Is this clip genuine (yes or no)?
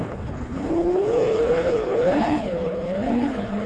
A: no